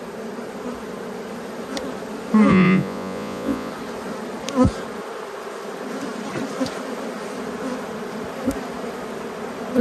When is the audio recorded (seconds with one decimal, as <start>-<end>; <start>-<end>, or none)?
0.0-2.5; 3.7-9.8